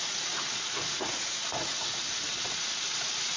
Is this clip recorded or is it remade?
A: remade